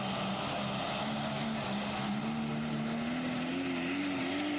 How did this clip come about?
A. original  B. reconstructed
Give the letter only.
A